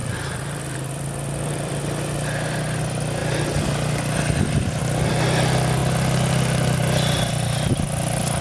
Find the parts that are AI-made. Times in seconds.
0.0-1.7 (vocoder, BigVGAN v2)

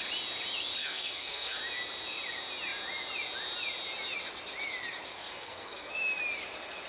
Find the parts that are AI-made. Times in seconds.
0.8-1.6 (codec, SNAC); 5.1-5.9

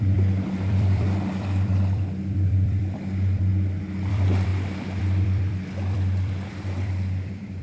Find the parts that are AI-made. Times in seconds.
0.0-3.5 (vocoder, BigVGAN v2); 4.1-4.5; 5.0-7.6

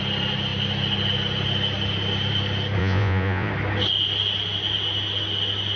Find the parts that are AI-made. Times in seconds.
2.8-3.5 (vocoder, Vocos)

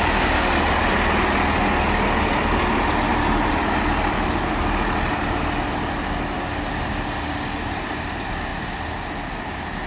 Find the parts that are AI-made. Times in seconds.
none